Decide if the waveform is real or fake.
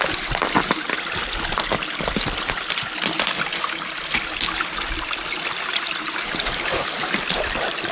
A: real